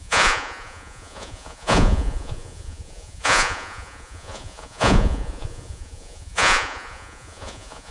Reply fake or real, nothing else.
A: fake